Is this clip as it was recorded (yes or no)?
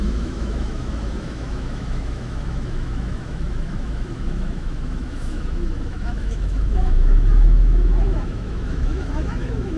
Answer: no